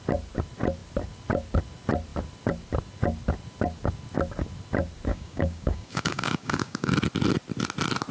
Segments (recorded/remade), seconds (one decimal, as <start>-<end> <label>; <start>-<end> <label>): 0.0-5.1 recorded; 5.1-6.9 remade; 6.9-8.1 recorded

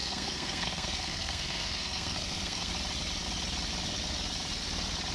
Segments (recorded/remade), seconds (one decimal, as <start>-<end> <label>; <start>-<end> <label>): 0.0-2.7 remade; 2.7-5.1 recorded

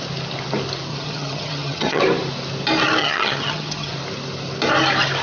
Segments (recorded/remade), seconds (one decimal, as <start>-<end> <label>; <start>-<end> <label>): 0.0-0.9 recorded; 0.9-2.0 remade; 2.0-3.0 recorded; 3.0-3.9 remade; 3.9-5.2 recorded